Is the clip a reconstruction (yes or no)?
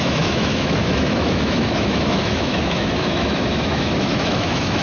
yes